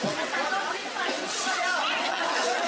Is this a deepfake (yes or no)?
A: yes